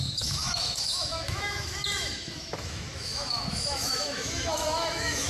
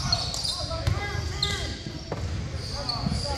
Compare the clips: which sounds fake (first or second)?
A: first